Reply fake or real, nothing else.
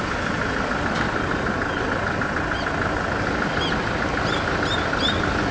real